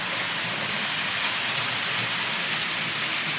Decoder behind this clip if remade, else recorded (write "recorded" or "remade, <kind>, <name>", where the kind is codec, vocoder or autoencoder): recorded